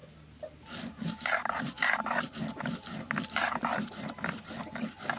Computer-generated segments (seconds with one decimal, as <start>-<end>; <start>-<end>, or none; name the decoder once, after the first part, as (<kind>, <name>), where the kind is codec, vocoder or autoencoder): none